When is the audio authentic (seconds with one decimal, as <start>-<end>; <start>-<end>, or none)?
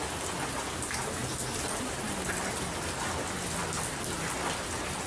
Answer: 0.0-5.1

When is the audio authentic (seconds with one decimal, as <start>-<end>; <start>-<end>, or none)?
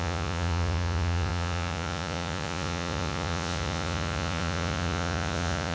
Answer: none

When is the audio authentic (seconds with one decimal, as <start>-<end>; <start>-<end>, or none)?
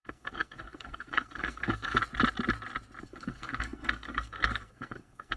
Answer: 2.0-3.0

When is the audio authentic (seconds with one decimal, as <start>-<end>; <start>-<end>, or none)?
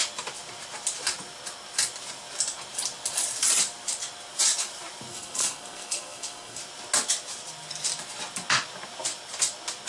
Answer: 0.0-5.1; 6.6-9.9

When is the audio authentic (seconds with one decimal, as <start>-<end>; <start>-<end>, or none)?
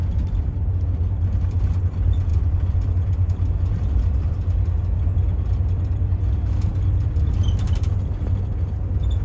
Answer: 0.0-2.3; 4.8-6.7; 7.9-9.2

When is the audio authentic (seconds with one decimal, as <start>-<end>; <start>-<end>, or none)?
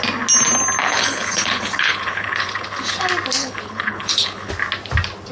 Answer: 0.0-0.8; 3.0-3.4; 4.5-5.3